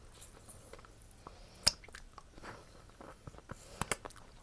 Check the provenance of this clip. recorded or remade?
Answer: recorded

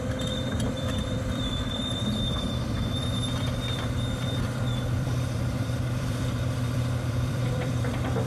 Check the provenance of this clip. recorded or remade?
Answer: remade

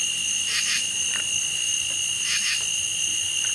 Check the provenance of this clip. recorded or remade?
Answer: remade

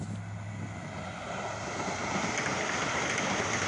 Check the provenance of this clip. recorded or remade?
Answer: recorded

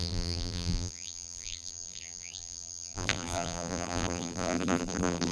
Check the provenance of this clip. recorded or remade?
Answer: remade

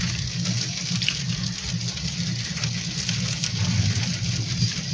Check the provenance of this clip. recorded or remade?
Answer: recorded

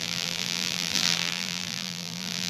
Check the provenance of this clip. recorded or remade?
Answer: remade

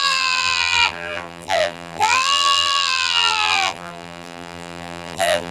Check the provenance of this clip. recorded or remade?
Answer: remade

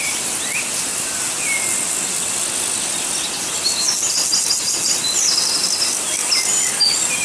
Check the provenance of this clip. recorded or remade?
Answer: recorded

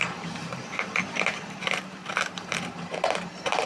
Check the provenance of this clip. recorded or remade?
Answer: remade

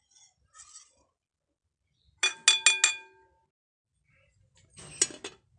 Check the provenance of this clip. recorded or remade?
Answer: recorded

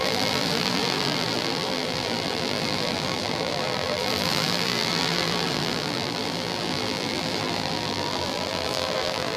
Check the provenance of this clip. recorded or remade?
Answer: remade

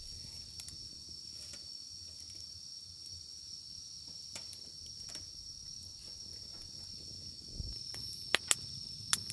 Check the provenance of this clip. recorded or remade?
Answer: recorded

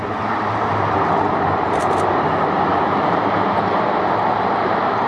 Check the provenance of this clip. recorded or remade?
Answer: remade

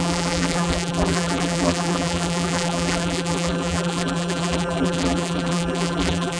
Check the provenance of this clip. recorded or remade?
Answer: remade